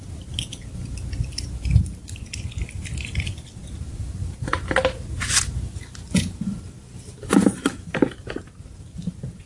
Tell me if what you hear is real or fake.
real